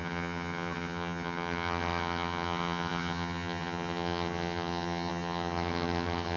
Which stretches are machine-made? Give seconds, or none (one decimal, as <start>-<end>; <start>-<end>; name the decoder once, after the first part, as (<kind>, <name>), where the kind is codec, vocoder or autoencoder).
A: 0.0-6.4 (vocoder, HiFi-GAN)

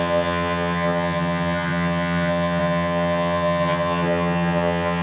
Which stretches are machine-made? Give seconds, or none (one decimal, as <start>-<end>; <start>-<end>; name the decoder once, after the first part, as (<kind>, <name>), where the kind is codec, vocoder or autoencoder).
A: 0.0-5.0 (vocoder, HiFi-GAN)